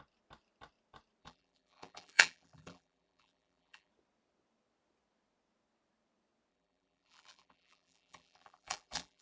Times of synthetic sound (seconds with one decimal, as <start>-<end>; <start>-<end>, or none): 1.2-3.9; 6.5-9.2